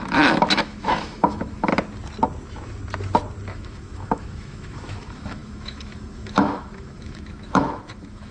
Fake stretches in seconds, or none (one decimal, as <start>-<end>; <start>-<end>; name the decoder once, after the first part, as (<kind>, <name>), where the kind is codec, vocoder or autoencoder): 0.0-1.7 (autoencoder, DAC-VAE); 3.5-8.3